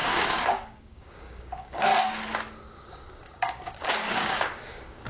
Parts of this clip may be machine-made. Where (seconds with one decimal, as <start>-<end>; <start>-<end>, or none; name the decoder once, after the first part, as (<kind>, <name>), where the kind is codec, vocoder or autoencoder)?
0.0-1.9 (codec, DAC); 2.8-5.1